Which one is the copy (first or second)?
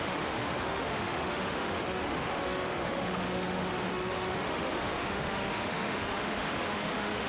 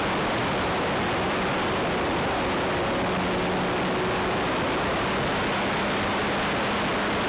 first